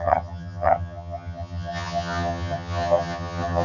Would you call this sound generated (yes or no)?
yes